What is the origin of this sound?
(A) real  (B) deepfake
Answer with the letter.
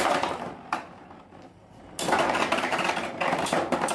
B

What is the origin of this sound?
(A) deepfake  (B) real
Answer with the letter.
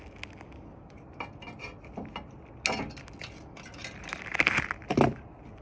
B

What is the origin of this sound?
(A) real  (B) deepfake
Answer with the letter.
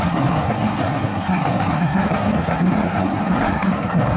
B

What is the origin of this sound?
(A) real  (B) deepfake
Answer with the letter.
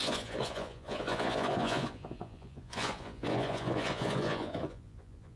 B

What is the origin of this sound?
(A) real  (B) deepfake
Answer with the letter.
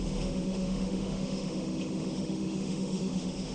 B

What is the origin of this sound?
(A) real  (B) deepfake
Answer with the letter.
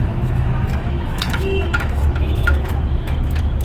B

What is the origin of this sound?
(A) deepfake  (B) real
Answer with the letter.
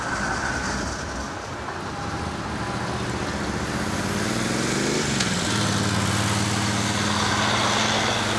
B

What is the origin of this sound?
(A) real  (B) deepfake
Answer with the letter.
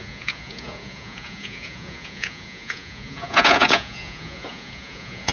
B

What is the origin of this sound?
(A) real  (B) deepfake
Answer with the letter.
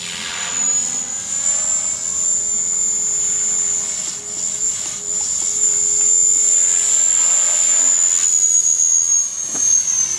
A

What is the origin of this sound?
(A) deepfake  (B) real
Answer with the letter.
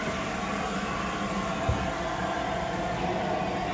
B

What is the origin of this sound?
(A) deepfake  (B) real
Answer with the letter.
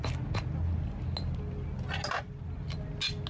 B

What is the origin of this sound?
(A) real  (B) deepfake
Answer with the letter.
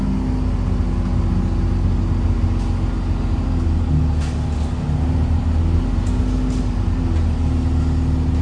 A